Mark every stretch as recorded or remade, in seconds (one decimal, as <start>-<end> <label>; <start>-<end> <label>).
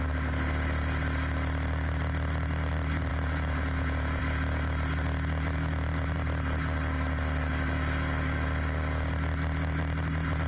0.0-3.1 recorded; 3.1-4.2 remade; 4.2-10.5 recorded